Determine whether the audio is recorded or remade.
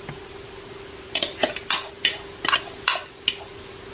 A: recorded